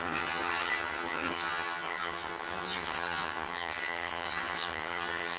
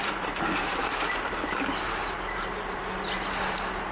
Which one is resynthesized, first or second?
first